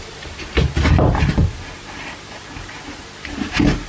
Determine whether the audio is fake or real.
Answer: real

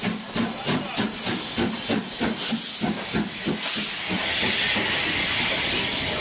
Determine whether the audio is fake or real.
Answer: real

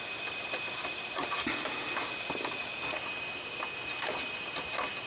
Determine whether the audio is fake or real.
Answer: real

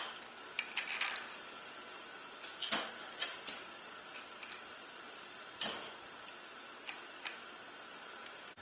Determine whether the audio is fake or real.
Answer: real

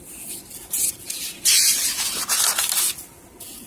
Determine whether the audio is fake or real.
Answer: real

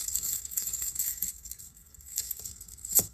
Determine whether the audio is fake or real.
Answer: fake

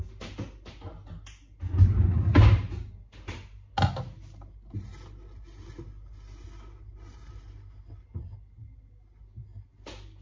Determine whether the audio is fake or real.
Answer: real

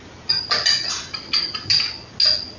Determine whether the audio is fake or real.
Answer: real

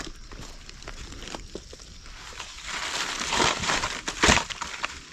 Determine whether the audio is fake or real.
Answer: fake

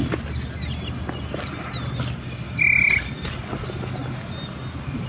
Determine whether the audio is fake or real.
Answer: real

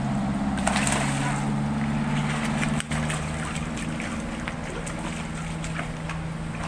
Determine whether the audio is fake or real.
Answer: real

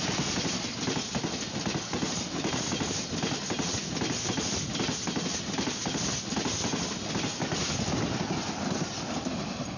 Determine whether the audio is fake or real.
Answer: real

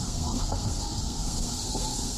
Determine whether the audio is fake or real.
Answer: fake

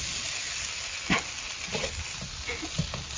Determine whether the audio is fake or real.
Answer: real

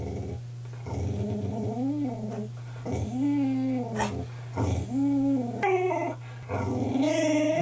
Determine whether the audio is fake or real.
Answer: real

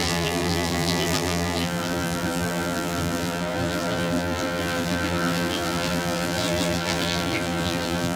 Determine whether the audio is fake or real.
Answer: fake